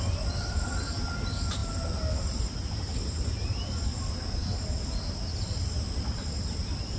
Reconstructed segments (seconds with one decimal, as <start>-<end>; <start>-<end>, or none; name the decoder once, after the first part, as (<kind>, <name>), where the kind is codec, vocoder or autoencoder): none